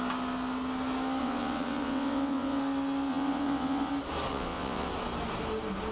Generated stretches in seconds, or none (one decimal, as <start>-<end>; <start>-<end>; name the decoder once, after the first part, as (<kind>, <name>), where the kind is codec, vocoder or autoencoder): 1.2-2.6 (vocoder, WaveNeXt); 3.1-3.9; 4.3-4.9